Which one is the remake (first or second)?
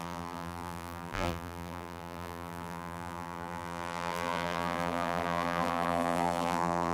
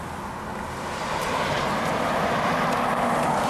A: first